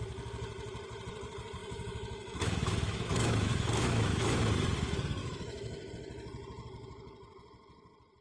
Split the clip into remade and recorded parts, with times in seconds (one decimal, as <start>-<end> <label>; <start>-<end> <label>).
0.0-1.6 recorded; 1.6-4.4 remade; 4.4-5.2 recorded; 5.2-5.9 remade; 5.9-8.2 recorded